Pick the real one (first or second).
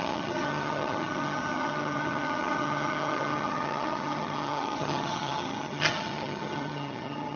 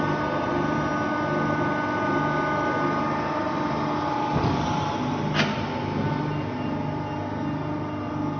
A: second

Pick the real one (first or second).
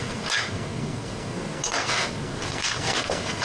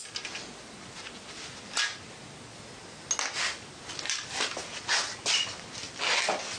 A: second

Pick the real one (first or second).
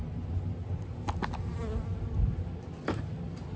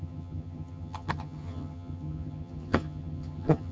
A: first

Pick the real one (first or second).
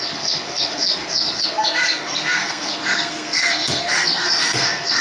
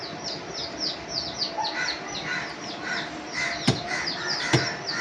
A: second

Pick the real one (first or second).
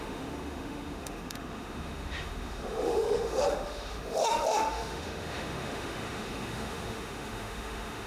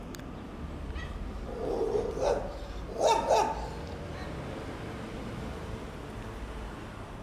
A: second